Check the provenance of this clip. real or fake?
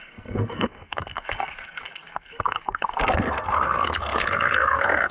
fake